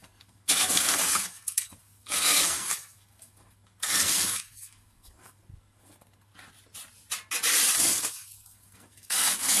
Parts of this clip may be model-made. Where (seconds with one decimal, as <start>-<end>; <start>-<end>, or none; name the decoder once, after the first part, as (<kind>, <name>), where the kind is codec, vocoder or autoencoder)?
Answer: 0.0-6.3 (codec, SNAC); 7.8-9.6